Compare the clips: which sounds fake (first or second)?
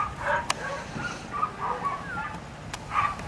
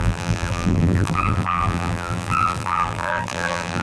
second